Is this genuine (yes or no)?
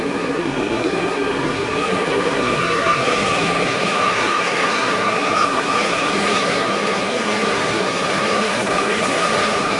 no